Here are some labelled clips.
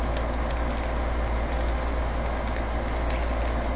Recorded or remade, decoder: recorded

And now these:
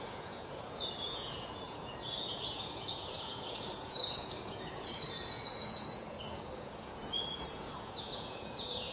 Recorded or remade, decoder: remade, vocoder, Vocos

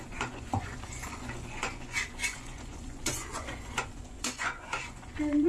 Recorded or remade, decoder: remade, vocoder, Vocos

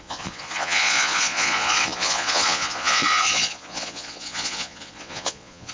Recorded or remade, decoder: remade, vocoder, Vocos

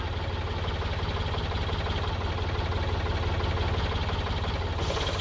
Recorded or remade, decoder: recorded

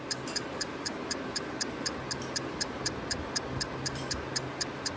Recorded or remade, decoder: recorded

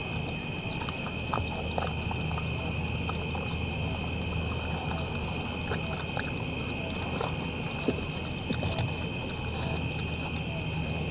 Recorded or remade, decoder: recorded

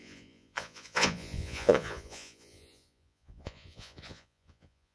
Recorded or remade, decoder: remade, vocoder, Vocos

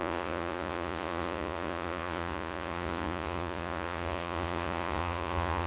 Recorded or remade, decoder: remade, vocoder, Vocos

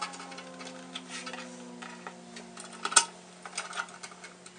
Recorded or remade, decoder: recorded